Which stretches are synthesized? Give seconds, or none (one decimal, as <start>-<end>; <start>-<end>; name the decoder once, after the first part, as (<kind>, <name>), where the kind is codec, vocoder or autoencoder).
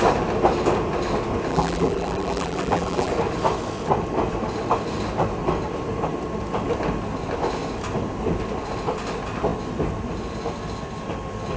1.5-3.1 (vocoder, BigVGAN v2)